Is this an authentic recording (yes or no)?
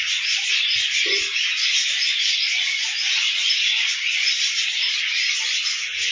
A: yes